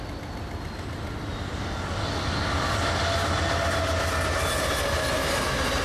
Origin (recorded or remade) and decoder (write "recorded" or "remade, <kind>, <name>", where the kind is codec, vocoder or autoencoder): recorded